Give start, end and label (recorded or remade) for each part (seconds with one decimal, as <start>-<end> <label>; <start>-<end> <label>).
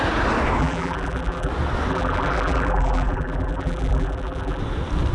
0.0-0.6 recorded; 0.6-1.5 remade; 1.5-1.9 recorded; 1.9-4.6 remade; 4.6-5.1 recorded